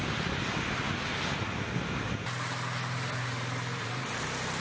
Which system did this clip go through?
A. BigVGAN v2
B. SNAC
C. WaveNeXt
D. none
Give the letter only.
D